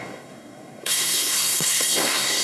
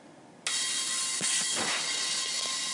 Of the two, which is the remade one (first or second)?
first